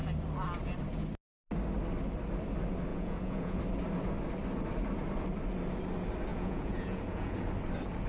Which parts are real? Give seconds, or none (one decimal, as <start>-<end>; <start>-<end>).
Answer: 0.0-2.9; 3.6-6.3; 7.5-8.1